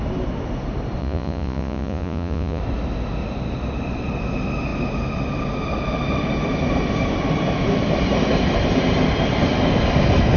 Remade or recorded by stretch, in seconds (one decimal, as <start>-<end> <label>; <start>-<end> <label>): 0.0-1.0 recorded; 1.0-2.6 remade; 2.6-10.4 recorded